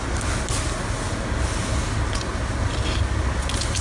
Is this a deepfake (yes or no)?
no